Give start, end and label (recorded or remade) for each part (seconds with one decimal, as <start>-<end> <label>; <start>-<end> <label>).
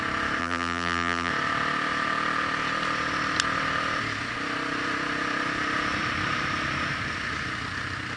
0.0-0.4 recorded; 0.4-1.3 remade; 1.3-8.2 recorded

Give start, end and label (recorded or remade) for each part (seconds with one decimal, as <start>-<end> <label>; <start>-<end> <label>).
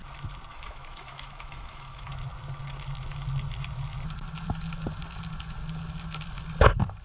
0.0-0.5 recorded; 0.5-2.1 remade; 2.1-7.0 recorded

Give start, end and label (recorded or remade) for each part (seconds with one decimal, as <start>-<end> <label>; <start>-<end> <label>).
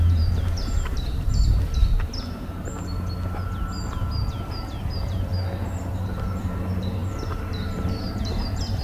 0.0-1.8 remade; 1.8-4.8 recorded; 4.8-5.3 remade; 5.3-5.9 recorded; 5.9-8.8 remade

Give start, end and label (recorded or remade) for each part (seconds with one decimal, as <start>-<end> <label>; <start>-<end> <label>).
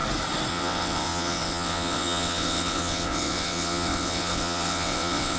0.0-0.5 recorded; 0.5-5.4 remade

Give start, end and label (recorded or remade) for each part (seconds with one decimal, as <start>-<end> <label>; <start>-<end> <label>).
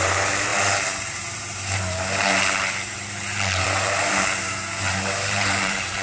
0.0-6.0 remade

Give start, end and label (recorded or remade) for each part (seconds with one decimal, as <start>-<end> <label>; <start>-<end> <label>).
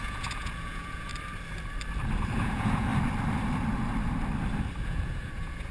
0.0-1.1 remade; 1.1-2.4 recorded; 2.4-2.9 remade; 2.9-4.8 recorded; 4.8-5.7 remade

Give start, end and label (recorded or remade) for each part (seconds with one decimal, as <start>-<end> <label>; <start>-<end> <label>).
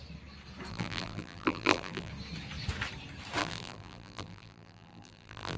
0.0-0.7 recorded; 0.7-2.1 remade; 2.1-3.4 recorded; 3.4-5.6 remade